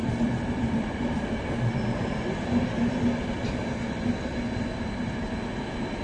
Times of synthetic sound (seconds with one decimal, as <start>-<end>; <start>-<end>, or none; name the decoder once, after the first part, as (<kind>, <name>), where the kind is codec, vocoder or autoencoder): 0.0-1.2 (vocoder, BigVGAN v2)